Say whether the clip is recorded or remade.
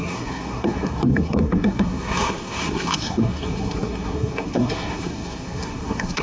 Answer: remade